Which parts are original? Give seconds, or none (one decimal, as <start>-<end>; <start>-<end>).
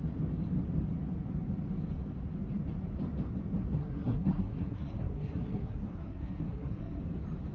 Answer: 0.0-3.8; 7.0-7.5